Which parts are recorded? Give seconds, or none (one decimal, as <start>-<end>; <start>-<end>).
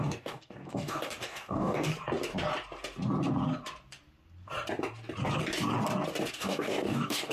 1.9-6.3